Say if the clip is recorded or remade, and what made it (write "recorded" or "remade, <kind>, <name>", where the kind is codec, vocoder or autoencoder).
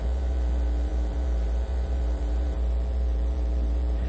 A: remade, vocoder, BigVGAN v2